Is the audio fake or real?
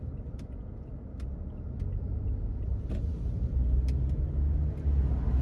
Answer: real